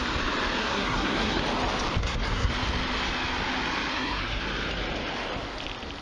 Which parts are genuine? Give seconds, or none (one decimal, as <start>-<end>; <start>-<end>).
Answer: 0.0-0.6; 1.4-2.0; 2.5-3.9; 4.4-6.0